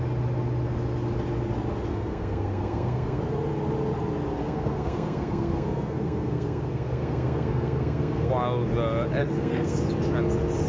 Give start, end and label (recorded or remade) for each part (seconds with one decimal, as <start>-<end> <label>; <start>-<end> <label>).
0.0-1.9 recorded; 1.9-3.2 remade; 3.2-4.4 recorded; 4.4-8.3 remade; 8.3-9.2 recorded; 9.2-9.8 remade; 9.8-10.7 recorded